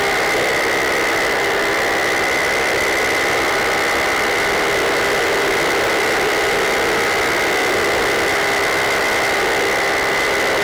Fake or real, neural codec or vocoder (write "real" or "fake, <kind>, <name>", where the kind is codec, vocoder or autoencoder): real